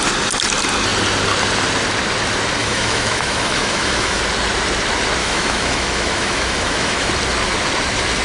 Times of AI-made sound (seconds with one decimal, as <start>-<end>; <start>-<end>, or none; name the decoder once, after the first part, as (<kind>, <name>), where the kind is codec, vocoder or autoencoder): 2.6-4.2 (autoencoder, DAC-VAE); 5.2-7.1